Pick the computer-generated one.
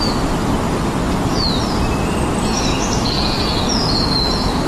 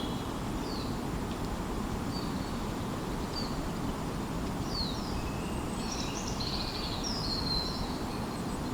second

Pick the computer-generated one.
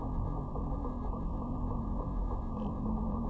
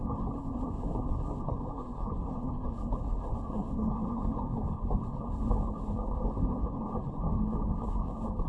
second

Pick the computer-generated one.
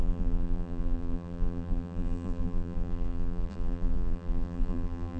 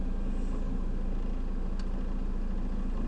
first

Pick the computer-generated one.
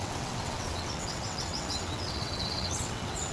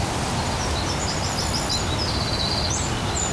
first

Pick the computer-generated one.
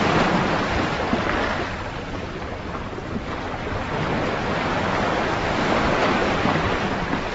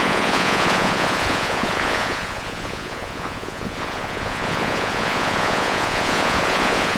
second